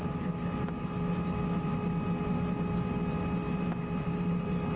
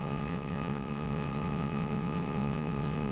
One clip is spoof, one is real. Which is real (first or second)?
first